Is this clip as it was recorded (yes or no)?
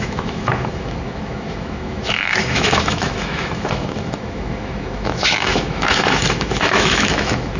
no